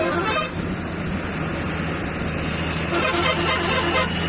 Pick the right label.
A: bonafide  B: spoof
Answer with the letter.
A